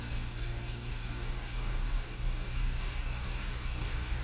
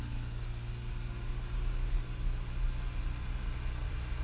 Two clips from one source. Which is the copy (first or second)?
first